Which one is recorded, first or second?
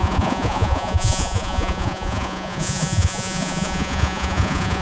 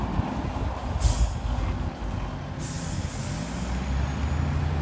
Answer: second